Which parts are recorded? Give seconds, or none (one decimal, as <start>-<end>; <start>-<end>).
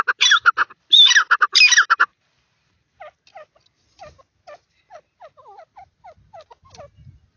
0.0-7.4